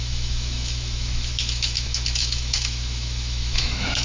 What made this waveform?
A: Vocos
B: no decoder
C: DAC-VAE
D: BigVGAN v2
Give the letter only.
C